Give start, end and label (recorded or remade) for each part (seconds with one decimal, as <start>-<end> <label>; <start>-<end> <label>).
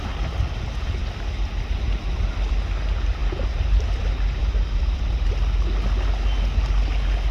0.0-3.2 recorded; 3.2-4.0 remade; 4.0-4.4 recorded; 4.4-5.3 remade; 5.3-7.3 recorded